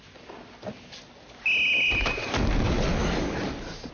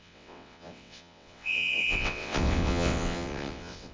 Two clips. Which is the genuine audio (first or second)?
first